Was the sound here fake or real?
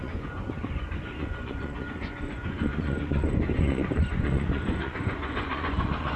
fake